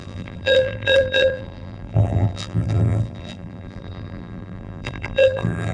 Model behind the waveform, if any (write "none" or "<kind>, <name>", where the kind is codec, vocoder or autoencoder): vocoder, BigVGAN v2